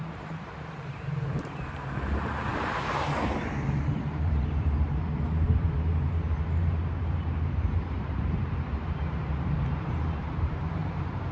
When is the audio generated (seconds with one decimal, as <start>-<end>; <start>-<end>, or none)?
0.0-2.5; 3.2-11.3